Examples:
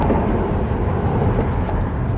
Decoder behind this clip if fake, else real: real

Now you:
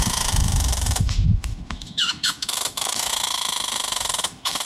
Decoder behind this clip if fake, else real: fake, autoencoder, DAC-VAE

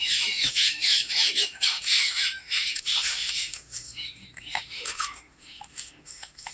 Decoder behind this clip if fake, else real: fake, autoencoder, DAC-VAE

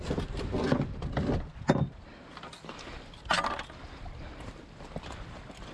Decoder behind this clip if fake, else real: real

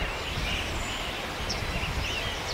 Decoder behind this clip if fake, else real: real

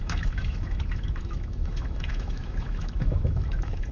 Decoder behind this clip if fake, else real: fake, autoencoder, DAC-VAE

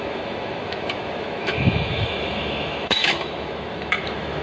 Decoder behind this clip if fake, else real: fake, autoencoder, DAC-VAE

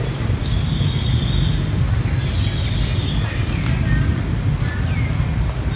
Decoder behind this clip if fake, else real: real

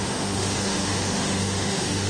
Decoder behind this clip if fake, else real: fake, autoencoder, DAC-VAE